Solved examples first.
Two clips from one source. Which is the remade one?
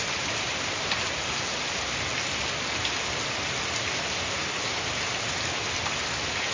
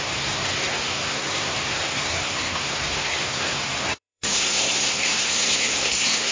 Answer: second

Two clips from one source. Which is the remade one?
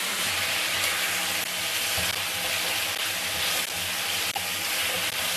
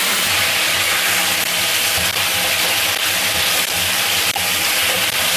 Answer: second